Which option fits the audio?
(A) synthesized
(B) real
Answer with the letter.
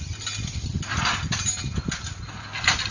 B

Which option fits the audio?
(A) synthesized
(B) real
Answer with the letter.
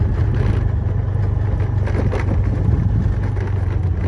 B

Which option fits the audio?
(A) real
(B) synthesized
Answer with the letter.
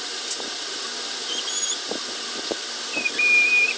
A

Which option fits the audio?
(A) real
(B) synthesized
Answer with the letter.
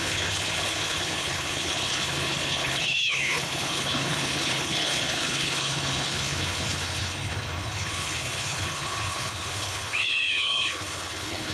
B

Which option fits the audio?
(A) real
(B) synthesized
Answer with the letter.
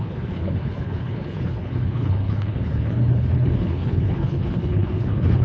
B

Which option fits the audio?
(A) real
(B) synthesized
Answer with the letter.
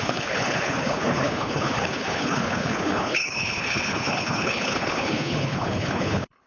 B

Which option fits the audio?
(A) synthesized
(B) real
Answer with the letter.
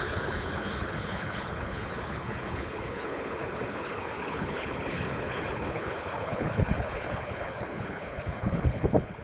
A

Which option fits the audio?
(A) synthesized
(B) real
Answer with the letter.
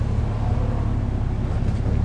B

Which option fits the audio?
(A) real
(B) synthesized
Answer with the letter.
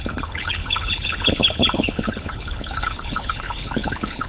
B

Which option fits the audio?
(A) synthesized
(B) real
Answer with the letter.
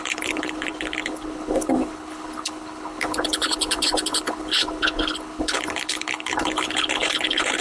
A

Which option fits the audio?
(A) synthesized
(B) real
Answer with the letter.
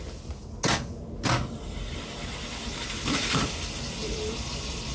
B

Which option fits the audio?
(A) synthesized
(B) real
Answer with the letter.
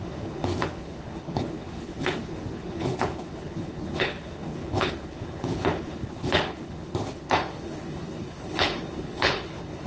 A